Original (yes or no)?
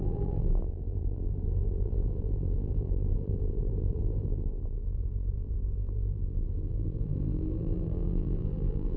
no